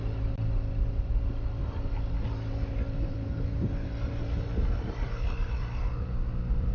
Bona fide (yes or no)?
yes